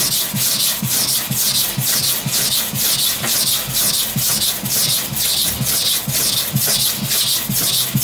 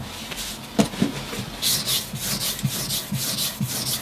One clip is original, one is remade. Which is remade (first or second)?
second